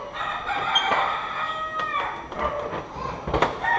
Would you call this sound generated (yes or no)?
no